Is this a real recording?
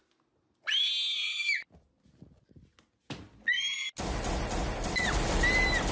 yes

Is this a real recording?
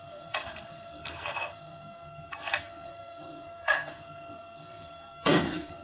no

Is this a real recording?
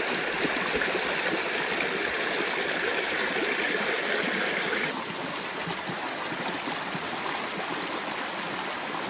yes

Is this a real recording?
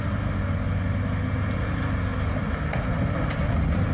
yes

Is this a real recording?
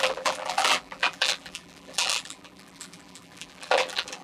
no